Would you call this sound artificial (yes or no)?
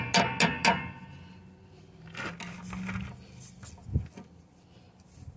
no